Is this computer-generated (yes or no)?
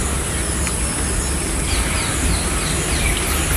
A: no